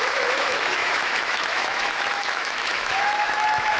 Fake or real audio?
fake